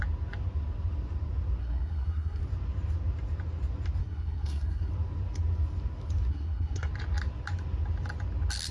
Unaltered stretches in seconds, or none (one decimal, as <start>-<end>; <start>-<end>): 0.0-1.6; 2.4-4.0; 4.9-6.3; 6.9-8.7